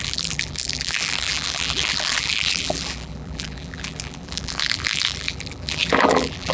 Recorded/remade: remade